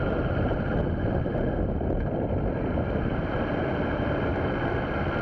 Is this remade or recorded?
recorded